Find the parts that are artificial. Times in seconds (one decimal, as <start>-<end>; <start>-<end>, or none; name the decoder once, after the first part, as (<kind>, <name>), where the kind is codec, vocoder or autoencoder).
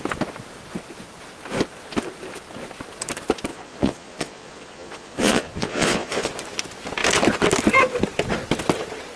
3.5-6.3 (vocoder, Vocos)